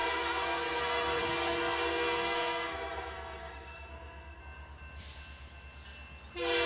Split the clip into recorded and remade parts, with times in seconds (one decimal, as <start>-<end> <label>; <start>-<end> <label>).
0.0-1.2 remade; 1.2-1.9 recorded; 1.9-4.4 remade; 4.4-6.7 recorded